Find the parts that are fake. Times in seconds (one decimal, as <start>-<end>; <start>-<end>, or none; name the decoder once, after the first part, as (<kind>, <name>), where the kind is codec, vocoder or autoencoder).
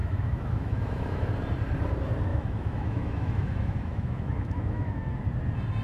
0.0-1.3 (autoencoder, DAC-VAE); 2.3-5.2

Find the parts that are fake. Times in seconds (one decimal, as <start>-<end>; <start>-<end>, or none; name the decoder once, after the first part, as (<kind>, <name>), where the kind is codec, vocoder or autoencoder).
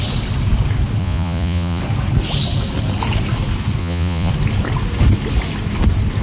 1.0-1.8 (vocoder, Vocos); 3.8-4.3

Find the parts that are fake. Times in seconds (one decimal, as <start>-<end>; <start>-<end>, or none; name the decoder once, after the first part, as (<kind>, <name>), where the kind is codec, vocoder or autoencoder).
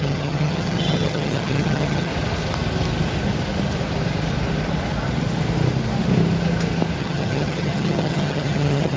0.0-2.1 (vocoder, HiFi-GAN); 7.0-9.0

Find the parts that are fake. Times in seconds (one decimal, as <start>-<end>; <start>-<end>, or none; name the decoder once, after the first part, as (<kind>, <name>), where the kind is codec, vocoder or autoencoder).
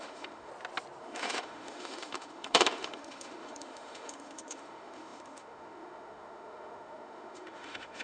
0.0-0.5 (autoencoder, DAC-VAE); 1.0-8.0